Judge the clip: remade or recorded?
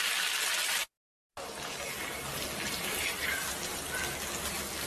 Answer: recorded